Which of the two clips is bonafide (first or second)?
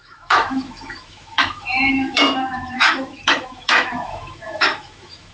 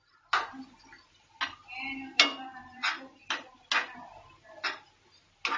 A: second